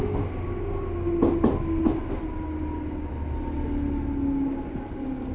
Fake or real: real